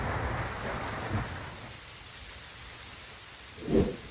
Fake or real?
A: real